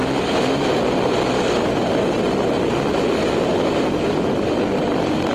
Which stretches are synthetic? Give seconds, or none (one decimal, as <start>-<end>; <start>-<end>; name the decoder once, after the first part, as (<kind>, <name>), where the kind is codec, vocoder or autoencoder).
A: none